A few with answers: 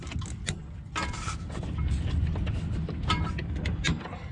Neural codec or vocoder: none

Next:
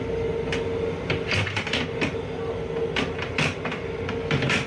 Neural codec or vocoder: none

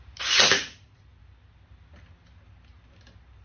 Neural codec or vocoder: none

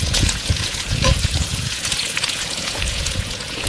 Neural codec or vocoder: vocoder, Vocos